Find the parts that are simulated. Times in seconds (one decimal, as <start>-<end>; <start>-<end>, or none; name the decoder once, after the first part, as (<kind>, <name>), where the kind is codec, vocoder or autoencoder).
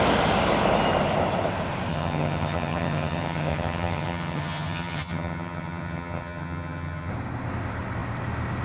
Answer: 1.9-7.1 (vocoder, HiFi-GAN)